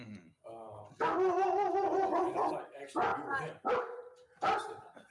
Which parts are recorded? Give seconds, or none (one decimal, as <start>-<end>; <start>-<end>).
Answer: 0.0-5.1